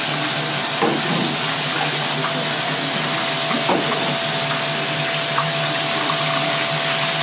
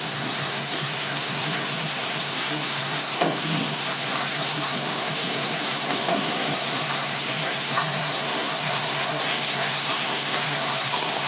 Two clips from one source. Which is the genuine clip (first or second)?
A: first